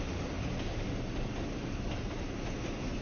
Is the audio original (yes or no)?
yes